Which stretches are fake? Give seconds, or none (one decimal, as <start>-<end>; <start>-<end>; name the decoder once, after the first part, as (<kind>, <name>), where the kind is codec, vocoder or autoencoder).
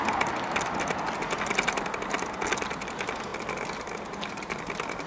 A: none